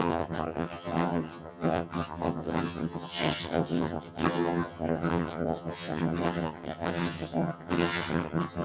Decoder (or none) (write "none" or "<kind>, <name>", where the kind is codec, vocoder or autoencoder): vocoder, HiFi-GAN